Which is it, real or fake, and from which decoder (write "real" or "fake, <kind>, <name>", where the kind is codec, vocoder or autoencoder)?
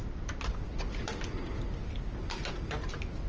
real